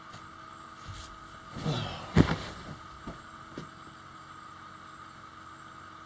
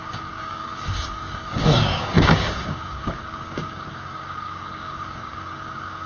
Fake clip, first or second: second